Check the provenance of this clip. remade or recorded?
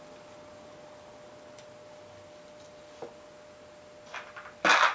recorded